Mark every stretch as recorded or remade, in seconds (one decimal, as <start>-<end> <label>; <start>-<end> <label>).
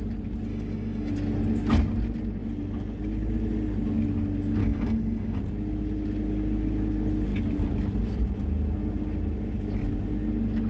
0.0-0.5 recorded; 0.5-1.1 remade; 1.1-4.6 recorded; 4.6-5.4 remade; 5.4-10.7 recorded